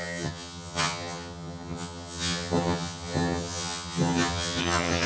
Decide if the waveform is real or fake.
fake